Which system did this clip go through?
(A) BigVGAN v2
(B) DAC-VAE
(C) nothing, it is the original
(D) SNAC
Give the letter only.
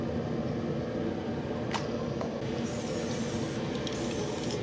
C